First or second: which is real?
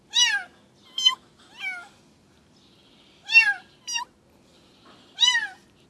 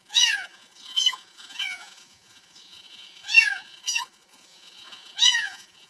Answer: first